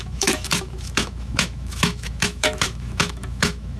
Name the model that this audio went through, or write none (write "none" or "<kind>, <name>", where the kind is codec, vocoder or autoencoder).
autoencoder, DAC-VAE